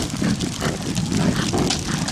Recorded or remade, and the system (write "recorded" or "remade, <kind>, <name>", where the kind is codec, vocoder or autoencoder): recorded